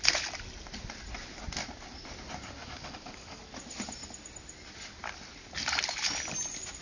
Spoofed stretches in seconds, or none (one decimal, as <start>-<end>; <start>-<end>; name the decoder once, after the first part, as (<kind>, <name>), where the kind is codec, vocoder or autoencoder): 2.6-3.4 (codec, DAC)